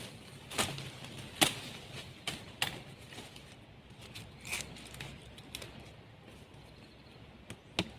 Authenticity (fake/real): real